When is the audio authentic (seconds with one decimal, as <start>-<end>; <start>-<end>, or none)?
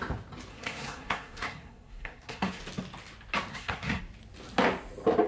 0.0-0.5; 2.6-3.5; 4.0-5.3